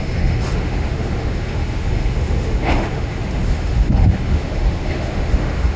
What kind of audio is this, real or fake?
fake